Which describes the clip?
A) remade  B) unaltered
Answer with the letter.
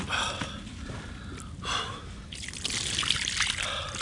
B